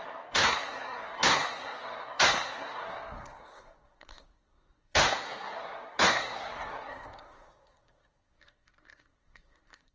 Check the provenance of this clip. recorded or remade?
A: remade